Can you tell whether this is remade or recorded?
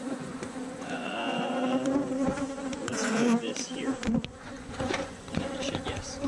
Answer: remade